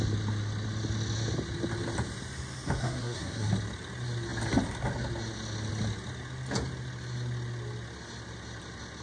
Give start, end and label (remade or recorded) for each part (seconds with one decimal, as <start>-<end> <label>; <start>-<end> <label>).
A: 0.0-2.8 recorded; 2.8-3.5 remade; 3.5-9.0 recorded